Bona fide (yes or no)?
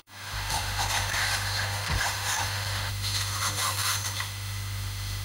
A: no